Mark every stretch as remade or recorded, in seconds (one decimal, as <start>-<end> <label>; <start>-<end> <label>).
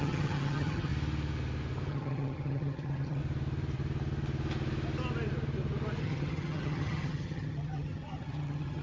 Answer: 0.0-0.9 remade; 0.9-1.9 recorded; 1.9-3.2 remade; 3.2-6.0 recorded; 6.0-8.8 remade